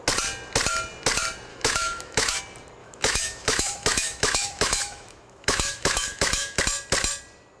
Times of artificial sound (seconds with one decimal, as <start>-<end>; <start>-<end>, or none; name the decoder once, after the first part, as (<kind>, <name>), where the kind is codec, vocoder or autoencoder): 1.5-2.4 (autoencoder, DAC-VAE); 2.8-6.6